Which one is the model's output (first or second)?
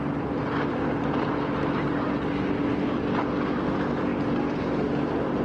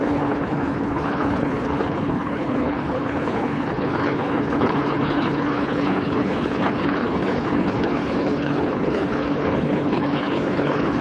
second